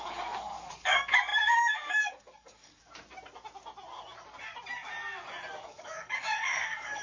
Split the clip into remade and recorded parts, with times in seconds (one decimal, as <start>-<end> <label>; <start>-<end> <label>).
0.0-2.8 remade; 2.8-5.6 recorded; 5.6-7.0 remade